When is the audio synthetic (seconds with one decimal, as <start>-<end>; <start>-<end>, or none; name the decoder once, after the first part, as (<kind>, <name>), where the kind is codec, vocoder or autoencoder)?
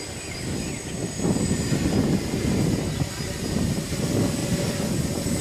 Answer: 1.0-3.1 (vocoder, BigVGAN v2); 4.4-5.4